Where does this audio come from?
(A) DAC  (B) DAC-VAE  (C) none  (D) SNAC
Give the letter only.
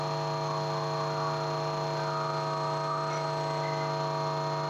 C